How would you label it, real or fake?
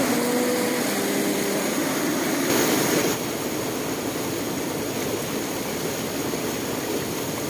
real